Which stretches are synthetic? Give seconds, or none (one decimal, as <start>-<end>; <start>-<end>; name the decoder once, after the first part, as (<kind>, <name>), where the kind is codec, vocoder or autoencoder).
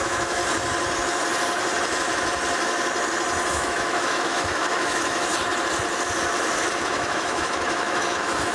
0.0-0.4 (autoencoder, DAC-VAE); 3.5-5.3; 6.8-8.5